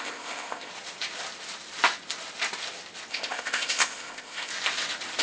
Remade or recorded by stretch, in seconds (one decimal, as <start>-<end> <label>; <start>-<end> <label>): 0.0-0.7 remade; 0.7-3.1 recorded; 3.1-4.5 remade; 4.5-5.2 recorded